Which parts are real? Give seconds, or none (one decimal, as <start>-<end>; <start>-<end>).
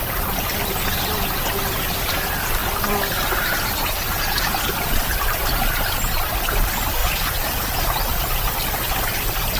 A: 0.0-7.0; 8.4-9.6